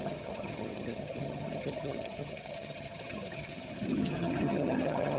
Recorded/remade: remade